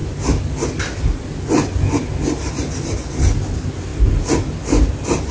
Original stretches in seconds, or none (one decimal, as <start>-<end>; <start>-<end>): 0.0-5.3